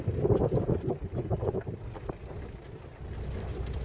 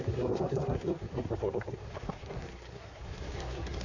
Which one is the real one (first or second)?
first